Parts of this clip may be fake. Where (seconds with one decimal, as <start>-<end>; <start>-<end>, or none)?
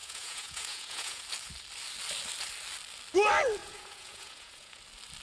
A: 0.0-1.2; 3.6-4.8